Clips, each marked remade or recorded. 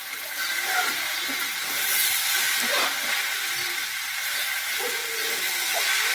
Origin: remade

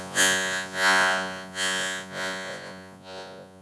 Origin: remade